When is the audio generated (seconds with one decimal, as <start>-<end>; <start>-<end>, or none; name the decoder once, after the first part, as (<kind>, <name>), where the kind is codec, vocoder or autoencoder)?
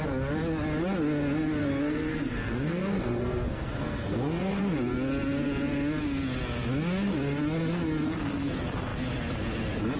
1.6-4.6 (codec, SNAC)